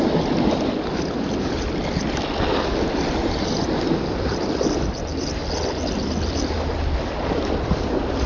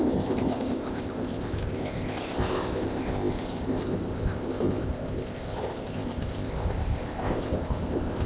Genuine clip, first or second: first